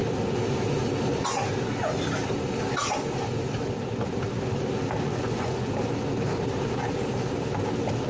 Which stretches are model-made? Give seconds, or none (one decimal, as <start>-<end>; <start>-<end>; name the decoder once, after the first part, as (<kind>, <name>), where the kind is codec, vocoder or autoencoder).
5.1-5.7 (vocoder, Vocos)